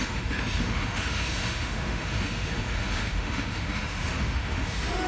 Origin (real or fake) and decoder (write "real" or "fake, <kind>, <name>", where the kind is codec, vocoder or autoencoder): fake, autoencoder, DAC-VAE